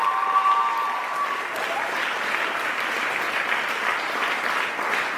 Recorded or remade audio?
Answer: recorded